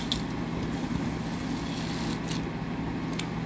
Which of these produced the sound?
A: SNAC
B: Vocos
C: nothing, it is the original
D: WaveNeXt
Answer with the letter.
C